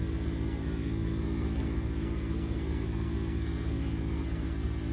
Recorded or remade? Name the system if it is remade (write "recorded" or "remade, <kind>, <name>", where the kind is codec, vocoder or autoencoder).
remade, codec, SNAC